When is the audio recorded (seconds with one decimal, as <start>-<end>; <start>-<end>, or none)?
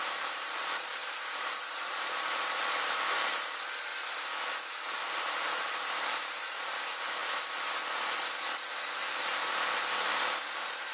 3.9-4.7; 7.2-9.2